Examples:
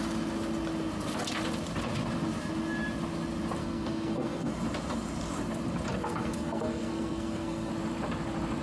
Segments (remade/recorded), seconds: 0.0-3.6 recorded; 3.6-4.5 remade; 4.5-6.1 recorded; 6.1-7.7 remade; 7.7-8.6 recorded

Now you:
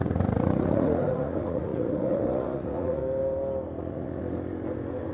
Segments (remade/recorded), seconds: 0.0-3.0 remade; 3.0-3.8 recorded; 3.8-4.2 remade; 4.2-5.1 recorded

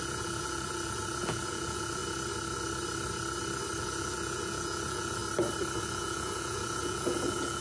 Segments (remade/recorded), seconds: 0.0-2.0 remade; 2.0-3.8 recorded; 3.8-5.2 remade; 5.2-5.8 recorded; 5.8-7.6 remade

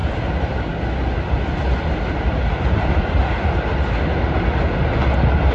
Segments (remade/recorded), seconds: 0.0-5.5 recorded